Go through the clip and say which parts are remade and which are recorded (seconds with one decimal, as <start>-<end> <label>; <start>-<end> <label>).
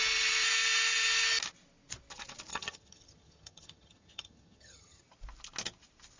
0.0-2.5 recorded; 2.5-5.0 remade; 5.0-6.2 recorded